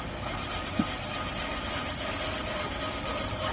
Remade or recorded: recorded